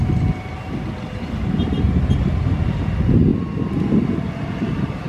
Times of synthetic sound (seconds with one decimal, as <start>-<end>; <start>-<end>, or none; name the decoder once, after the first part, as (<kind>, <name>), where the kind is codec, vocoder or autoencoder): none